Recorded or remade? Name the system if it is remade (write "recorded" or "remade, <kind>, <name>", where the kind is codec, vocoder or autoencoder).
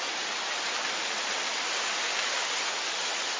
recorded